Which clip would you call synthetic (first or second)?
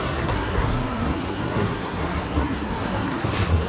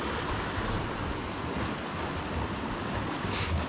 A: first